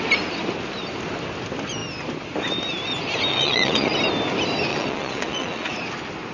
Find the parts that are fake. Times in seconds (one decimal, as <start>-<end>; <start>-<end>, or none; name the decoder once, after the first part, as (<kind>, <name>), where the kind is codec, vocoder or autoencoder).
3.3-3.9 (vocoder, Vocos); 4.7-5.7